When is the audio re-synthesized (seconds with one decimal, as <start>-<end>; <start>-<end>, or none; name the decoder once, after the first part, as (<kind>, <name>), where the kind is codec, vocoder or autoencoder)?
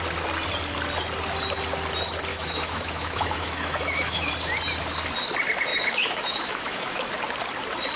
2.3-4.3 (autoencoder, DAC-VAE); 5.7-7.1